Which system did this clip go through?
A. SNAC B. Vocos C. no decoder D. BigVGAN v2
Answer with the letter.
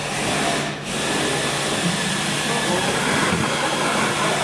C